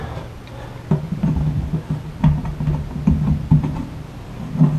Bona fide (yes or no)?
yes